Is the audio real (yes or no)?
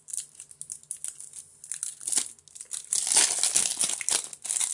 yes